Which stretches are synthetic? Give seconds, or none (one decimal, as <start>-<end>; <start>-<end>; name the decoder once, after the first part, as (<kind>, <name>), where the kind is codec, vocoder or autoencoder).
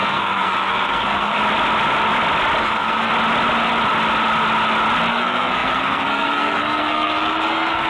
0.0-1.4 (codec, SNAC); 2.6-3.1; 5.1-7.9